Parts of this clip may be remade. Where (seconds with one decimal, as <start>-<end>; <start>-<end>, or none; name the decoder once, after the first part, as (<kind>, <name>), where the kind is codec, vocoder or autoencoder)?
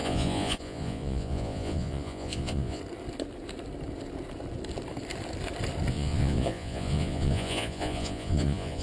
0.0-2.8 (vocoder, Vocos); 5.9-8.8